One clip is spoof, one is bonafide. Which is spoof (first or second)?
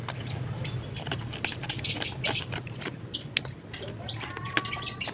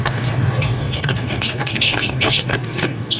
second